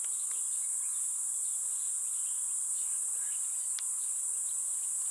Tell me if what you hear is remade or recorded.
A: recorded